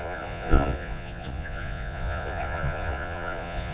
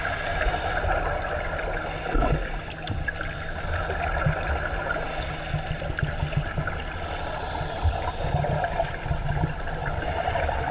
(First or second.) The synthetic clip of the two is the first